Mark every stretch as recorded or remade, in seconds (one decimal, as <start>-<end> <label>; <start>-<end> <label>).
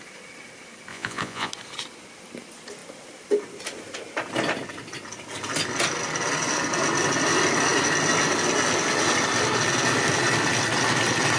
0.0-0.9 recorded; 0.9-1.5 remade; 1.5-11.4 recorded